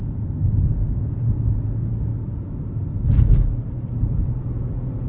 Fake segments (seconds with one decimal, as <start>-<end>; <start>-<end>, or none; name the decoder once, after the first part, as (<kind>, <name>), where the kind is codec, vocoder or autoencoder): 0.0-2.1 (vocoder, Vocos); 3.9-5.1